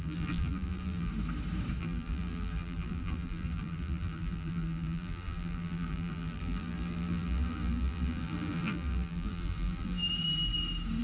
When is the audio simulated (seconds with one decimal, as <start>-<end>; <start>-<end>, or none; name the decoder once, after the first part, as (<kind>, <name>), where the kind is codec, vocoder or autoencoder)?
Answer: 0.0-1.1 (vocoder, BigVGAN v2); 1.8-10.0